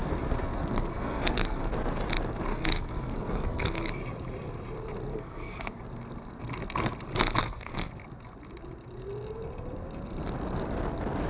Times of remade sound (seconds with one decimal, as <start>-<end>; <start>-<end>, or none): 0.0-1.7; 2.5-3.9; 5.1-5.8; 7.4-7.9